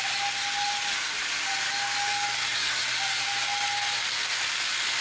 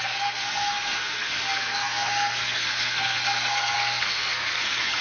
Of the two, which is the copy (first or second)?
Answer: second